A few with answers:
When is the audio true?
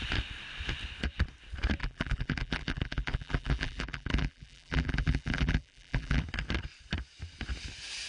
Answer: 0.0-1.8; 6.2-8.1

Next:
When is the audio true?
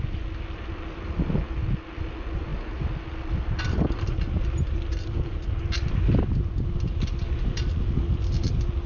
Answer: 0.0-8.9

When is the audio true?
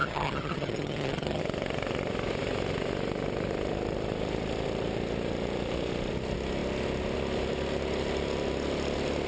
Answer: 1.4-9.3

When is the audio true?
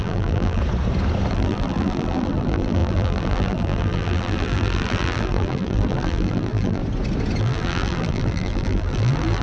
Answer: 0.6-1.3; 6.8-7.4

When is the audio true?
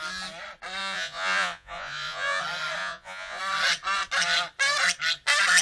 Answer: 0.0-0.8; 2.4-2.8; 3.4-5.6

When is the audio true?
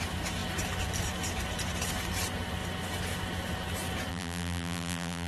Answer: 0.0-4.1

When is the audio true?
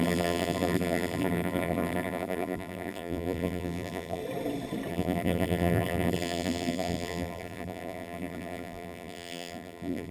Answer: 4.2-4.9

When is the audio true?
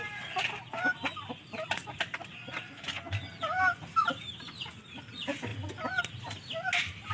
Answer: 0.0-7.1